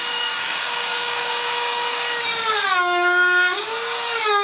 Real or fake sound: fake